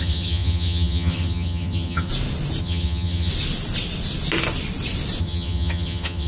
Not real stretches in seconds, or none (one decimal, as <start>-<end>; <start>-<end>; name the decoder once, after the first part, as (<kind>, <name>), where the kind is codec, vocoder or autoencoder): 0.0-2.1 (vocoder, HiFi-GAN); 2.6-3.3; 5.2-6.3